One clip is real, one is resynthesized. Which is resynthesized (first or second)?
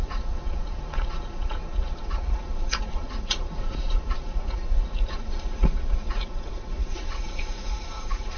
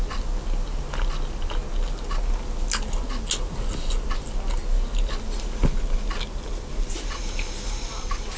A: first